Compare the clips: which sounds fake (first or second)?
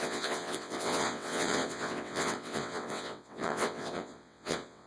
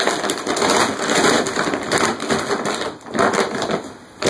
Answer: first